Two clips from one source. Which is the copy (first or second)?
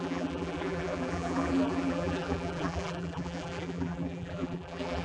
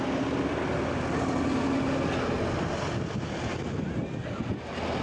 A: first